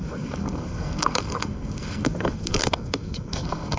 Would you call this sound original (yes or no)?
no